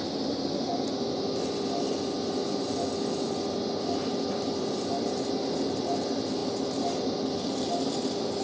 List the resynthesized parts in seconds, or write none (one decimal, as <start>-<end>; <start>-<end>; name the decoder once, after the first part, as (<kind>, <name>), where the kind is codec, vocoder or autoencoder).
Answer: none